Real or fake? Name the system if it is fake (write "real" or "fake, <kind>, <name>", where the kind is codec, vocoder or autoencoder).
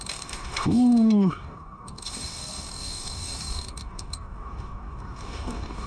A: fake, codec, DAC